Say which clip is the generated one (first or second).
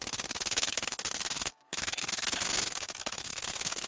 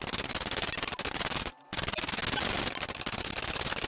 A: first